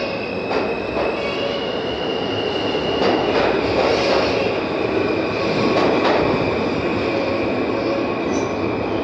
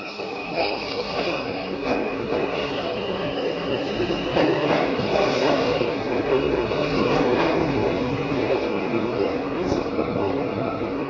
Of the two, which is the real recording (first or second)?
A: first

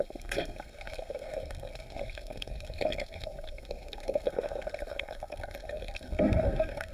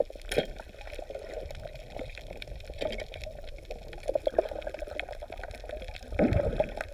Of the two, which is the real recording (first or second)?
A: second